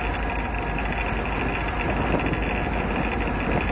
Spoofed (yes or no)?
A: no